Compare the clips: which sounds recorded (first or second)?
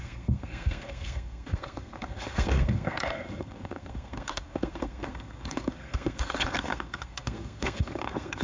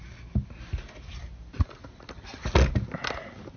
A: second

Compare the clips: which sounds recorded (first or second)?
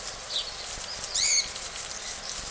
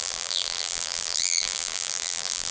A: first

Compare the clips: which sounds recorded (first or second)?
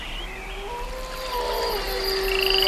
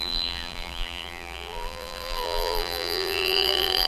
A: first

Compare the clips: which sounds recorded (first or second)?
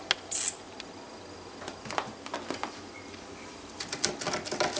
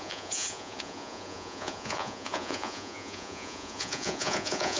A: first